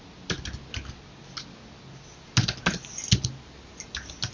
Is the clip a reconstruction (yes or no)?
no